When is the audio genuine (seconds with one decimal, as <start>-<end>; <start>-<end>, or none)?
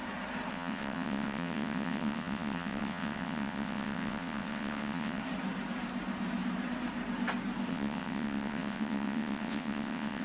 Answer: 0.0-0.5; 5.2-7.7